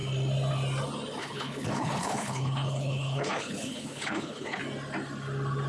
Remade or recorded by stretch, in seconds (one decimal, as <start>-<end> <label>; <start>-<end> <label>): 0.0-1.2 recorded; 1.2-4.6 remade; 4.6-5.7 recorded

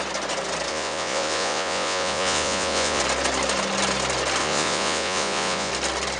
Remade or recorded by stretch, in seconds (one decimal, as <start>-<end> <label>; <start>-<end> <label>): 0.0-0.7 recorded; 0.7-3.0 remade; 3.0-4.4 recorded; 4.4-5.7 remade; 5.7-6.2 recorded

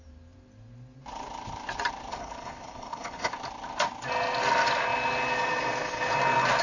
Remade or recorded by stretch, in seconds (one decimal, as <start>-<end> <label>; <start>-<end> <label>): 0.0-2.1 recorded; 2.1-3.3 remade; 3.3-6.6 recorded